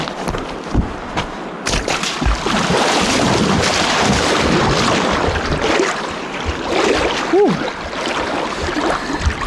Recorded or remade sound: recorded